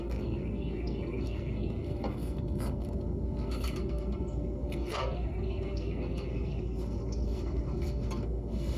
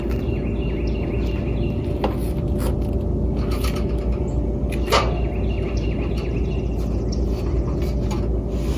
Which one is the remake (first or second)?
first